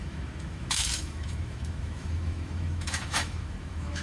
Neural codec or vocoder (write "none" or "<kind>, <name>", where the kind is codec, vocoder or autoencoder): autoencoder, DAC-VAE